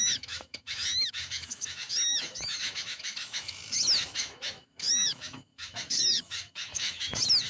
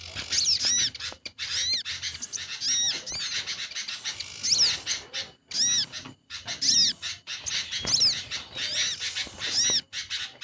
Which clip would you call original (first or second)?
second